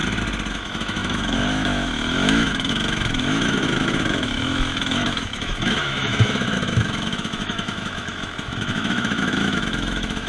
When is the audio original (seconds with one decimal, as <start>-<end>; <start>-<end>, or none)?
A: 0.0-0.5